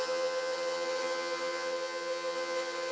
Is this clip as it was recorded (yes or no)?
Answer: no